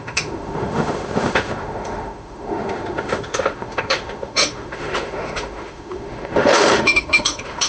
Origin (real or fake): fake